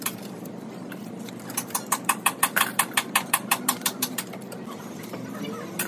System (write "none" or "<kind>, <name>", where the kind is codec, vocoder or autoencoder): vocoder, BigVGAN v2